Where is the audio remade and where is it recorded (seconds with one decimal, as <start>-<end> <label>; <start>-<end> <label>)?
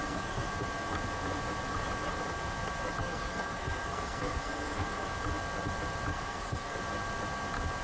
0.0-0.5 remade; 0.5-3.0 recorded; 3.0-5.1 remade; 5.1-6.1 recorded; 6.1-6.8 remade; 6.8-7.8 recorded